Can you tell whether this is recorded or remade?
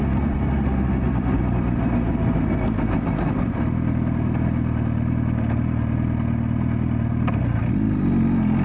recorded